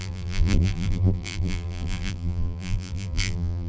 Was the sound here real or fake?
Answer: fake